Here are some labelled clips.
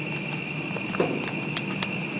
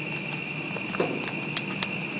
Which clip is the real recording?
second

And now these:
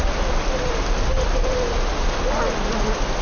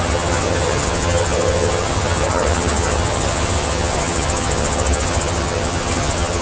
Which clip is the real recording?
first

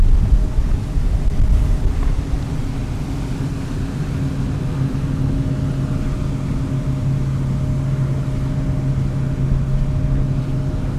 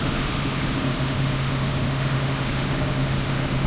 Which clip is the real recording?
first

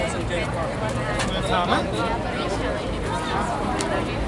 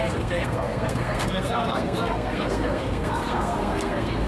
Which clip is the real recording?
first